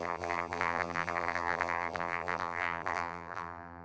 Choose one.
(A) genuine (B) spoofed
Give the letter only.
B